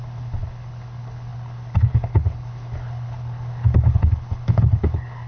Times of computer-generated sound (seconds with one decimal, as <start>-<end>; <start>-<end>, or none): 0.0-5.3

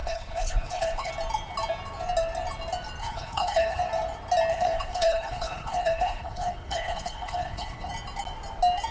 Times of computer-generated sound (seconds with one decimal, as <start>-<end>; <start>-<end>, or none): 0.0-1.1; 3.0-3.8; 4.5-7.9

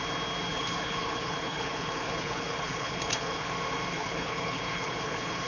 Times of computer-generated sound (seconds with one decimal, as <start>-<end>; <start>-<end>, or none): 0.5-3.5; 3.9-5.5

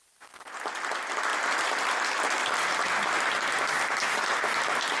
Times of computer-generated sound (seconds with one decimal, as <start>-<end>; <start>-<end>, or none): none

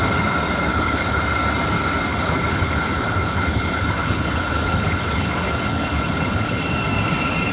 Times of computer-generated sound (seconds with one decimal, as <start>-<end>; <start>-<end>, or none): 0.7-1.2; 2.1-6.6

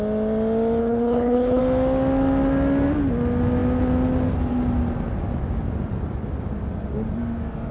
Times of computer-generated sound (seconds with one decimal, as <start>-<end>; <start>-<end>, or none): 0.8-1.6

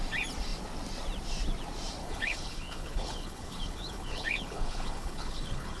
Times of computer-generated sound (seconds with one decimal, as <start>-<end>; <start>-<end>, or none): 2.0-5.8